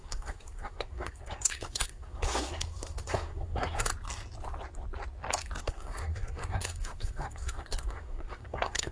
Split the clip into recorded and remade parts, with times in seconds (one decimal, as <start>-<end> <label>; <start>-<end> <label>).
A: 0.0-3.9 remade; 3.9-5.6 recorded; 5.6-8.9 remade